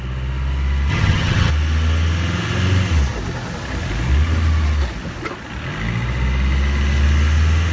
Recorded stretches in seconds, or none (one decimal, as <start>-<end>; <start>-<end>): 0.0-0.9; 1.5-7.7